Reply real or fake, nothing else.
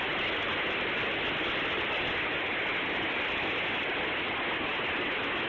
real